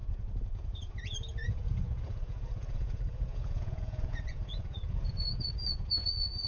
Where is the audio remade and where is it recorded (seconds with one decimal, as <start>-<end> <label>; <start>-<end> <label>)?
0.0-6.5 remade